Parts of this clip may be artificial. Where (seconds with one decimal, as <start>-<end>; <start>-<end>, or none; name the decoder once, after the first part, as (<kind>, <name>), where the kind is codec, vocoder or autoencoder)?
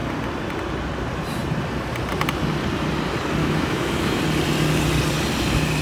3.4-4.2 (autoencoder, DAC-VAE)